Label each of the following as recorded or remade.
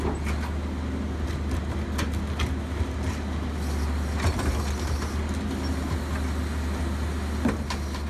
recorded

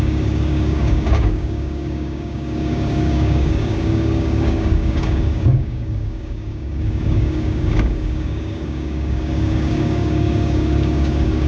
remade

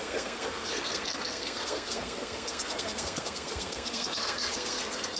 remade